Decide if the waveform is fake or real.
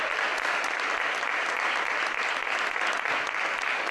real